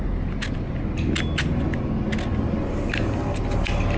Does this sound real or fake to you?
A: real